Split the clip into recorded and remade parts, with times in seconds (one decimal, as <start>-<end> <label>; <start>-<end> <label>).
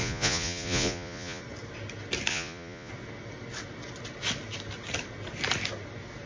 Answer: 0.0-1.4 remade; 1.4-2.3 recorded; 2.3-2.9 remade; 2.9-6.3 recorded